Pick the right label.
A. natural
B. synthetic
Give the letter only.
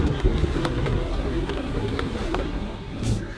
B